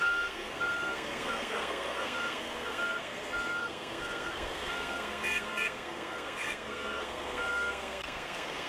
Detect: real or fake fake